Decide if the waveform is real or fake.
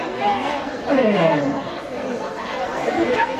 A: fake